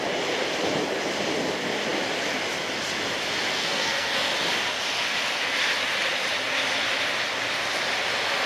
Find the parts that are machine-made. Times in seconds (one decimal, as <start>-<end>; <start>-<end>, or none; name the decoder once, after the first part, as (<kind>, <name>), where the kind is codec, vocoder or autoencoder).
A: 3.5-4.3 (codec, SNAC)